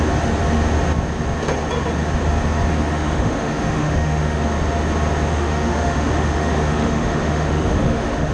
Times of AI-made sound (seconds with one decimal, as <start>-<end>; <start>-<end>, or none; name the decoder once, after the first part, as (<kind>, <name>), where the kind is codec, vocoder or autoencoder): 2.7-4.4 (autoencoder, DAC-VAE); 5.3-8.3

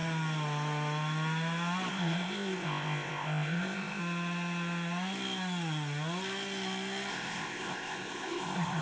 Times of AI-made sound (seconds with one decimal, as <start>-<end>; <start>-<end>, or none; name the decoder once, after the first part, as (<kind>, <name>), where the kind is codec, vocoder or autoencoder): 1.9-4.0 (codec, ZipCodec); 7.1-8.8

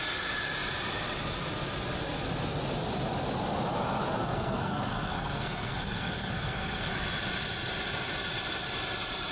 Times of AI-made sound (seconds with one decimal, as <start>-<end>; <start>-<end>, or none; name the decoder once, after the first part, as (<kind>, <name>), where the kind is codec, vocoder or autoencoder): 4.2-6.9 (codec, SNAC)

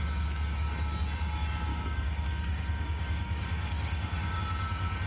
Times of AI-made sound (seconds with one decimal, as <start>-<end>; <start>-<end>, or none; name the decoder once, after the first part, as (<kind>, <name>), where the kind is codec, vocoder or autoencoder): 1.7-4.4 (codec, DAC)

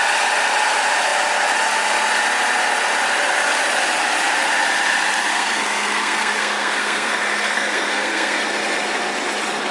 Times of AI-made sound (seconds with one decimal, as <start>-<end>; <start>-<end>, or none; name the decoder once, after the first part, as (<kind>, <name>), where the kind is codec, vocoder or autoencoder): 5.3-8.4 (codec, SNAC)

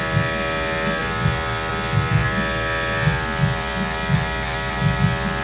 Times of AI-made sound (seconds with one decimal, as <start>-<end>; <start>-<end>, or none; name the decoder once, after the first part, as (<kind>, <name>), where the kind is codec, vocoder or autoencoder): none

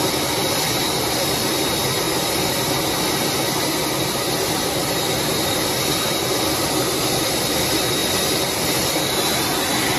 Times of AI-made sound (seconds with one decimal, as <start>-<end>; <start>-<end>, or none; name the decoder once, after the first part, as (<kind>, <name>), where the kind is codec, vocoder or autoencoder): none